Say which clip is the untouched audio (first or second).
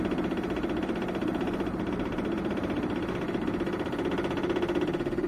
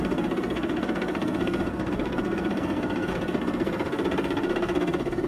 first